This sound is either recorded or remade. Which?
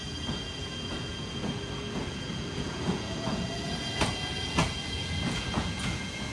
remade